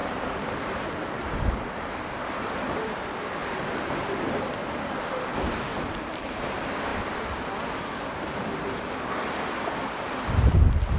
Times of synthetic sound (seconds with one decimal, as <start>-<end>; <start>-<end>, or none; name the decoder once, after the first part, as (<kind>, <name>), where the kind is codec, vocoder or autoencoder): 0.0-1.3 (vocoder, BigVGAN v2); 3.4-4.5; 5.7-6.5

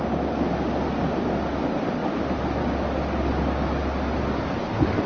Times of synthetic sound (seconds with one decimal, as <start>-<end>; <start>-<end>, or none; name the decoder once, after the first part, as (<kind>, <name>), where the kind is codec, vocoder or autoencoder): none

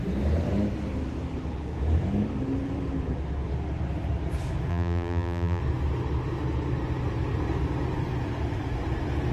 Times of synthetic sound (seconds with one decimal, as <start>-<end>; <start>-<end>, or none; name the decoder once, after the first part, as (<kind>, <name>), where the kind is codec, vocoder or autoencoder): 4.7-5.6 (vocoder, BigVGAN v2)

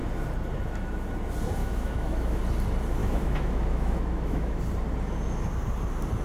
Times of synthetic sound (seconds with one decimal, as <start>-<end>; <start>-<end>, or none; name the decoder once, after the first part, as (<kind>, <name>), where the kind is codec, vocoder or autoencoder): 1.6-2.4 (autoencoder, DAC-VAE); 3.0-4.6

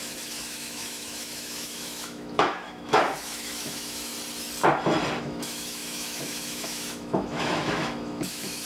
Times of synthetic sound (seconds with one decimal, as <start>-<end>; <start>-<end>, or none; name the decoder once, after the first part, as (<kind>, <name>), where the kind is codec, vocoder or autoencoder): 0.0-4.1 (autoencoder, DAC-VAE); 5.2-8.7

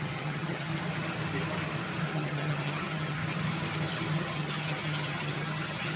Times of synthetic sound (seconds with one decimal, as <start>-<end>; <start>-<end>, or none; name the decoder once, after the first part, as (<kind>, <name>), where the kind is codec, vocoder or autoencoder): 0.0-0.7 (vocoder, HiFi-GAN); 2.1-3.2; 4.2-6.0